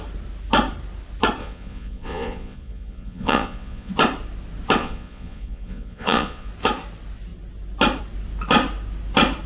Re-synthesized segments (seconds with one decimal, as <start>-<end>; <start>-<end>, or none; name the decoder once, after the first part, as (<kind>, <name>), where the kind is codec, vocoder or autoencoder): 1.4-3.9 (vocoder, Vocos); 4.8-6.5